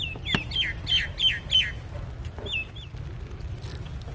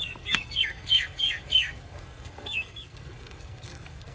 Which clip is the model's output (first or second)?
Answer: second